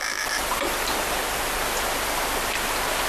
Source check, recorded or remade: recorded